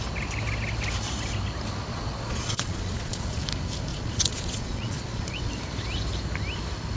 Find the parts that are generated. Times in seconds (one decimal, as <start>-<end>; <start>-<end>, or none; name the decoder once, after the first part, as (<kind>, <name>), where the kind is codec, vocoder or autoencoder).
1.9-3.4 (vocoder, Vocos); 3.9-5.5